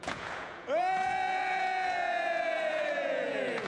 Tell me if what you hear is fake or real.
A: fake